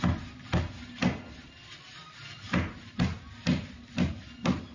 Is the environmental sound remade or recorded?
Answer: recorded